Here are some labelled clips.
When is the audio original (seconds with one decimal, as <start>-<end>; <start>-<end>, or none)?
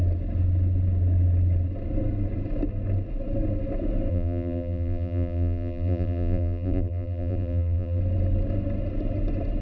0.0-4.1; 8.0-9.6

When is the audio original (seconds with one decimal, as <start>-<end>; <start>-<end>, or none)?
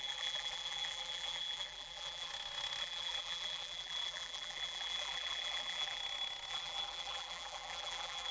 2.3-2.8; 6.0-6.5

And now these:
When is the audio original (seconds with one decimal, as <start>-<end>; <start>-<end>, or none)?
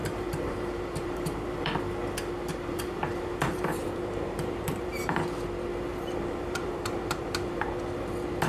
1.8-2.5; 5.2-5.9; 7.8-8.5